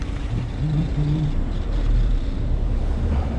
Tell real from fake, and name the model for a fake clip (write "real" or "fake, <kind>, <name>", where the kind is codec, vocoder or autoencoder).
fake, vocoder, BigVGAN v2